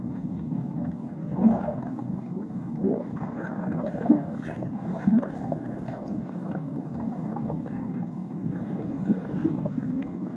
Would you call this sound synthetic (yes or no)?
yes